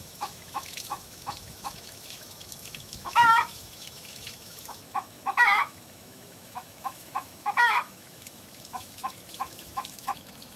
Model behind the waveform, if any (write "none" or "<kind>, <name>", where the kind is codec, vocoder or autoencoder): autoencoder, DAC-VAE